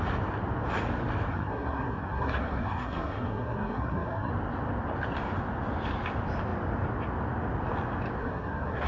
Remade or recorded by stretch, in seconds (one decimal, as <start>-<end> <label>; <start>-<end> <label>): 0.0-1.3 recorded; 1.3-4.3 remade; 4.3-8.2 recorded; 8.2-8.9 remade